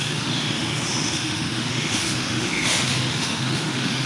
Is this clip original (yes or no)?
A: no